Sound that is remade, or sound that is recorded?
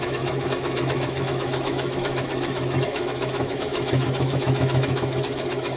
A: remade